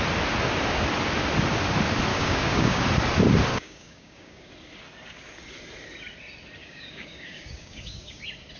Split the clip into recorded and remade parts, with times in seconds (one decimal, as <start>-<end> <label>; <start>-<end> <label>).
0.0-2.1 recorded; 2.1-2.8 remade; 2.8-3.5 recorded; 3.5-4.5 remade; 4.5-6.6 recorded; 6.6-8.2 remade; 8.2-8.6 recorded